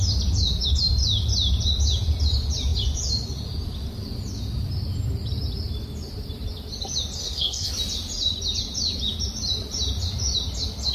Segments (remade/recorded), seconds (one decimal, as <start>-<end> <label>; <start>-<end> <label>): 0.0-7.2 recorded; 7.2-7.7 remade; 7.7-10.9 recorded